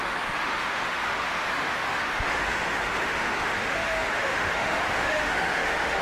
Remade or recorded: remade